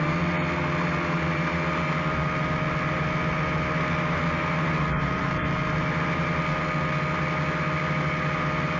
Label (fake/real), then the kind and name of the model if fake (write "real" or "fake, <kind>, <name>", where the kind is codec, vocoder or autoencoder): real